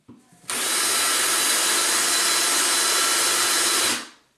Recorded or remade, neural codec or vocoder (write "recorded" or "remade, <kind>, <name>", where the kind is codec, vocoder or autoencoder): recorded